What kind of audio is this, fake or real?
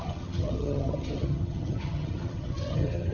fake